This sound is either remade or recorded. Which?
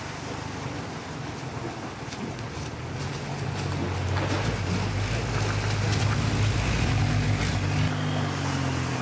recorded